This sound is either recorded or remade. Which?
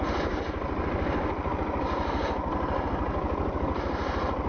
recorded